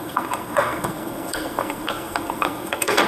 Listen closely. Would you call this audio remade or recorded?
remade